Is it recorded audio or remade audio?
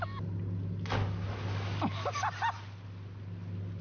recorded